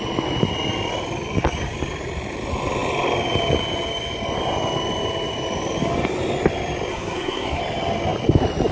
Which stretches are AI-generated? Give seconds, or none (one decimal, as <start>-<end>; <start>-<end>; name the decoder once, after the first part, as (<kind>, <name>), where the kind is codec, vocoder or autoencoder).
6.9-7.6 (codec, SNAC)